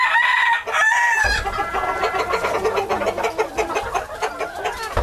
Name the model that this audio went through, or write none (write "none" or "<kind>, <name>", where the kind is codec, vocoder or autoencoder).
none